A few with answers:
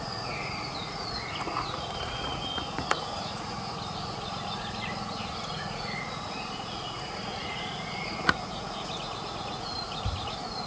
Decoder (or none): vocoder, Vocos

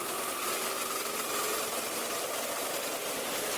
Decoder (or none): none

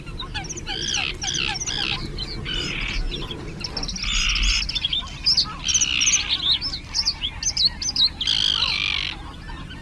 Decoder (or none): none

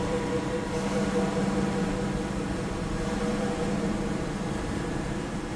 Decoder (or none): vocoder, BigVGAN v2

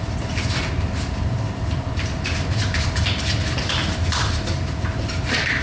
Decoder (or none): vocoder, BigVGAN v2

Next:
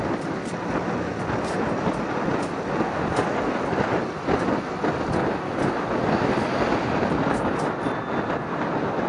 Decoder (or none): none